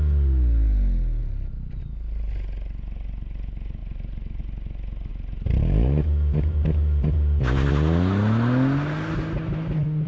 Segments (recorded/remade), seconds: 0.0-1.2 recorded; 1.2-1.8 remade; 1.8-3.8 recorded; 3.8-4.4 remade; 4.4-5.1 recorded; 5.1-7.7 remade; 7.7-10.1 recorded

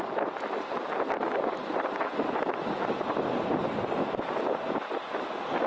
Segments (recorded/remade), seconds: 0.0-5.7 recorded